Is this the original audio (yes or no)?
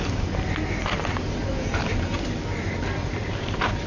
yes